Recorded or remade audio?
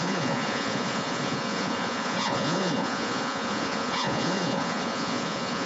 remade